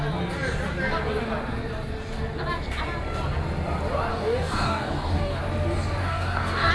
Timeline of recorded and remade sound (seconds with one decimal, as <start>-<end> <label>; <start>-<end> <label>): 0.0-4.1 recorded; 4.1-5.4 remade; 5.4-6.0 recorded; 6.0-6.7 remade